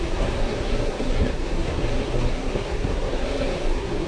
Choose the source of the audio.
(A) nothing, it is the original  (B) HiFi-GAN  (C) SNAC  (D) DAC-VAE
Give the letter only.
C